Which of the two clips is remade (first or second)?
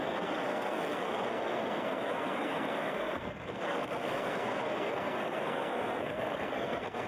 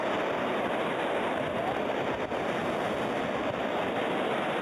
first